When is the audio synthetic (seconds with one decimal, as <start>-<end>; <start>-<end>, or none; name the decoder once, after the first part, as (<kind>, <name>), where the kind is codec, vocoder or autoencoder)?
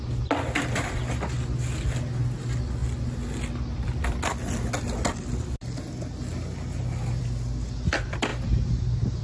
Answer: none